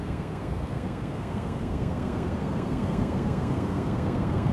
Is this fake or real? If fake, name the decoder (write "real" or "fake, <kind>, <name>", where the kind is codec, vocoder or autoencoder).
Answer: fake, codec, SNAC